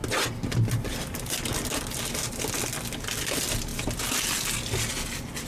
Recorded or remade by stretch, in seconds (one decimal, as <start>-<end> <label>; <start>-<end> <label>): 0.0-5.5 recorded